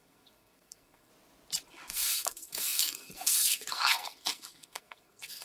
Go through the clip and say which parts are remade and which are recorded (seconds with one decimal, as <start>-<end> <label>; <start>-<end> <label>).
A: 0.0-1.1 remade; 1.1-1.7 recorded; 1.7-5.4 remade